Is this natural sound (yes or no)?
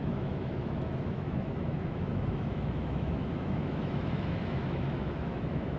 no